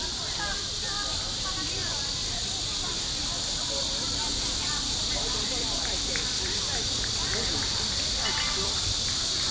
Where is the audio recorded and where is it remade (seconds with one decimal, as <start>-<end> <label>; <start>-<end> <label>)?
0.0-1.0 remade; 1.0-5.0 recorded; 5.0-9.5 remade